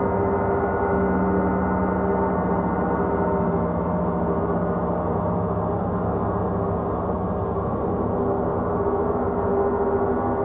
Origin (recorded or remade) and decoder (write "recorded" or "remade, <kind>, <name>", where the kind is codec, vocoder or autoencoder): recorded